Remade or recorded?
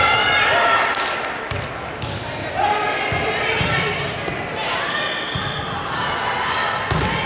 recorded